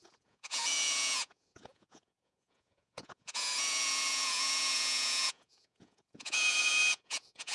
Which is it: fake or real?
fake